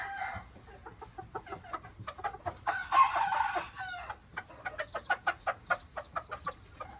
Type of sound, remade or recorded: recorded